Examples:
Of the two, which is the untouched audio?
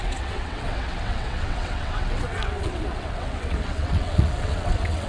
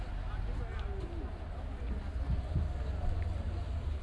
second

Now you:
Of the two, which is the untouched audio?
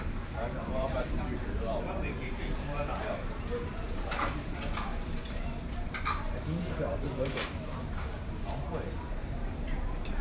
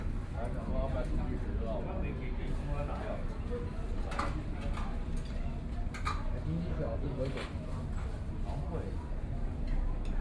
second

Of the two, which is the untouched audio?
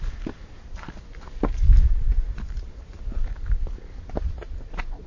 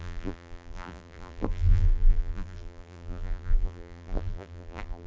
first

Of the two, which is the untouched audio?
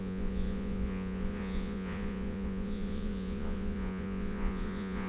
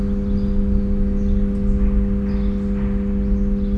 second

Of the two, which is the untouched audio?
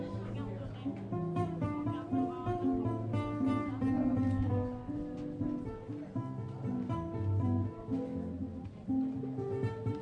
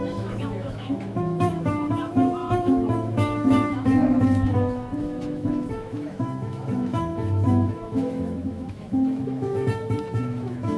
first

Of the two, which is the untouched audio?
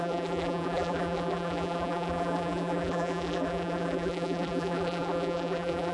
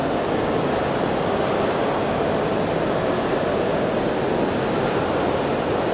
second